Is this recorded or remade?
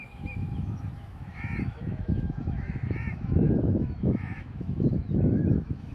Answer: remade